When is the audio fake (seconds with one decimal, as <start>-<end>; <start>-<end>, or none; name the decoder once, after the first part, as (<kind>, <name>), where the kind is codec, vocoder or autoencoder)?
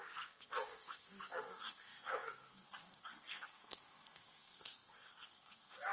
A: 0.0-5.9 (codec, SNAC)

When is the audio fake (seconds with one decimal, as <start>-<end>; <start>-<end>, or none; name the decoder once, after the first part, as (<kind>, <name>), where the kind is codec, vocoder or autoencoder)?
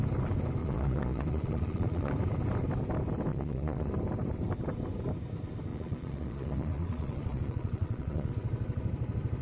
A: 0.6-2.1 (vocoder, Vocos); 3.3-3.9; 5.7-8.3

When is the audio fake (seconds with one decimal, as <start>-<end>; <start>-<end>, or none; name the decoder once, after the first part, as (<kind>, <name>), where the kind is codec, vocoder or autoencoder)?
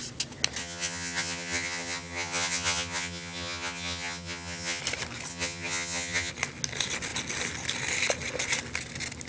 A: 0.6-4.8 (vocoder, HiFi-GAN); 5.3-6.3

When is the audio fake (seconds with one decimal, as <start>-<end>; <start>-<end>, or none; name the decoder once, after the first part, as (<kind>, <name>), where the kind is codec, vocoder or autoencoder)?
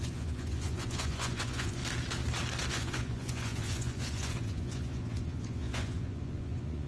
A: 0.0-1.8 (vocoder, Vocos); 2.7-6.9